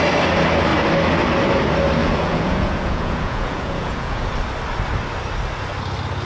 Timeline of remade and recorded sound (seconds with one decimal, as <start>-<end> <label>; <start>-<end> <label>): 0.0-2.0 recorded; 2.0-4.3 remade; 4.3-6.2 recorded

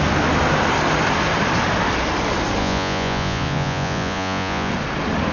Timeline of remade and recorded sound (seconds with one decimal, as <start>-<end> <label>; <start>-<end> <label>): 0.0-2.6 recorded; 2.6-4.7 remade; 4.7-5.3 recorded

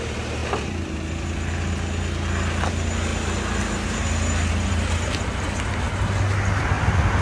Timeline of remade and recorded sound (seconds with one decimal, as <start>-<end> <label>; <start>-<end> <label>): 0.0-7.2 recorded

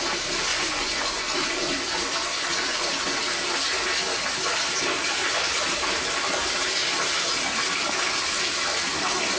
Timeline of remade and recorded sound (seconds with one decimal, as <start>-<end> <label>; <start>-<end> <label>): 0.0-0.5 recorded; 0.5-1.7 remade; 1.7-2.2 recorded; 2.2-3.2 remade; 3.2-9.4 recorded

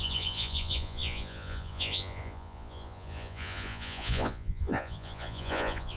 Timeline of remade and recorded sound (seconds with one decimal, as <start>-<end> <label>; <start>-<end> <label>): 0.0-6.0 remade

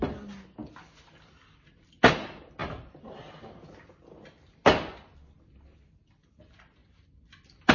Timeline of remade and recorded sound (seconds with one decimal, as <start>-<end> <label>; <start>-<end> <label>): 0.0-0.6 recorded; 0.6-2.1 remade; 2.1-2.6 recorded; 2.6-3.4 remade; 3.4-6.8 recorded; 6.8-7.7 remade

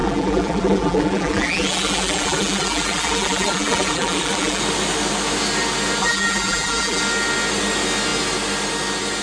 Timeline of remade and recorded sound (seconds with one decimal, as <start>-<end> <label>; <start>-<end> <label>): 0.0-4.6 remade; 4.6-6.0 recorded; 6.0-7.0 remade; 7.0-9.2 recorded